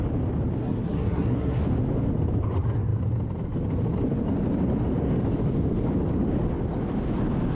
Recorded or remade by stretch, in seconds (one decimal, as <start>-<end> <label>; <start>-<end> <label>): 0.0-0.6 recorded; 0.6-1.6 remade; 1.6-7.5 recorded